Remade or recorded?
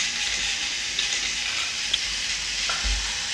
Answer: recorded